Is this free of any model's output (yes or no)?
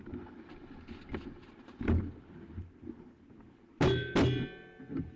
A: yes